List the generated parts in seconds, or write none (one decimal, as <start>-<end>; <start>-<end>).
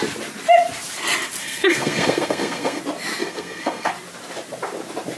1.4-2.8; 3.2-3.9